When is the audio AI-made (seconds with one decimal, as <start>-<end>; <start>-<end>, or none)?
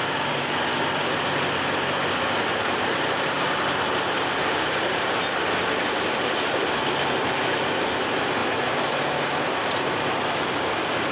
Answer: 0.0-0.5